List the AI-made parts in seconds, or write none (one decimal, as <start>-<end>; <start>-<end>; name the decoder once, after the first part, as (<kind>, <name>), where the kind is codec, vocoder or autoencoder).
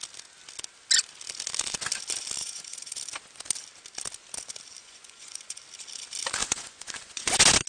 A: 2.4-3.0 (vocoder, Vocos); 4.8-5.6; 6.4-7.3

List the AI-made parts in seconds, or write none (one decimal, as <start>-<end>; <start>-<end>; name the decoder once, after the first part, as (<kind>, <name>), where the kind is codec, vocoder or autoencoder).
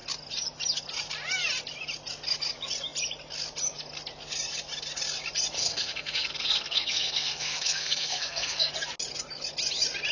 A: 5.6-8.7 (codec, SNAC)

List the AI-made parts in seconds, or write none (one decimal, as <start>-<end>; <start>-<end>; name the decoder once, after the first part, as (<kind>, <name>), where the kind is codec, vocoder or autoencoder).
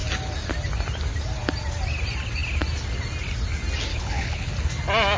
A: 3.9-4.5 (codec, HILCodec)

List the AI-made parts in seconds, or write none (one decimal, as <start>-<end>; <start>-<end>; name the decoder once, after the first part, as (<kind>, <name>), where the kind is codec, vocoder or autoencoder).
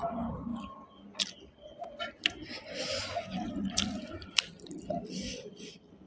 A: 0.0-0.5 (vocoder, BigVGAN v2); 3.5-6.1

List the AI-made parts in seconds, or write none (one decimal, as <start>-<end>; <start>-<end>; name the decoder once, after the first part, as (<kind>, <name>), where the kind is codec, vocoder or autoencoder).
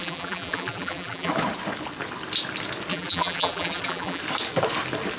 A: 0.0-1.3 (vocoder, BigVGAN v2); 2.9-4.2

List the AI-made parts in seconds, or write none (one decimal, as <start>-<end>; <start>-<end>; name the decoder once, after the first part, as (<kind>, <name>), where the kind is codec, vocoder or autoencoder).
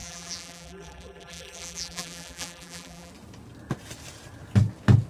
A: 0.0-3.1 (vocoder, BigVGAN v2)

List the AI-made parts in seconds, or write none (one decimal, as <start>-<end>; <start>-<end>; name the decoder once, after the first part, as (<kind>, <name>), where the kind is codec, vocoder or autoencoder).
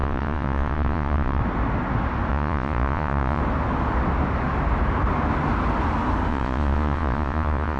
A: 0.0-1.4 (vocoder, Vocos); 2.3-3.4; 6.3-7.8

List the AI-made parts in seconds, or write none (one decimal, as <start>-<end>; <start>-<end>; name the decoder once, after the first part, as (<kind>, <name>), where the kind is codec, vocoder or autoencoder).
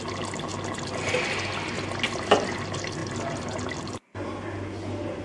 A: none